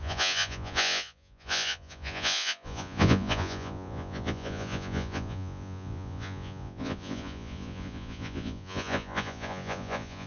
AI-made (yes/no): yes